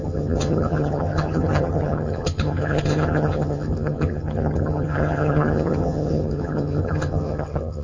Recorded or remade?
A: remade